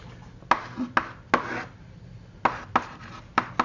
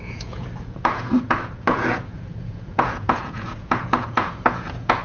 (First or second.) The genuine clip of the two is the first